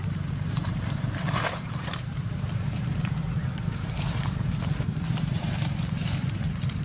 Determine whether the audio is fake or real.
fake